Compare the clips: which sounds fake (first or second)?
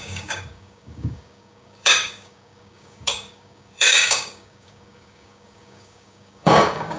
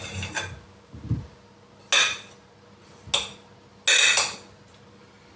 first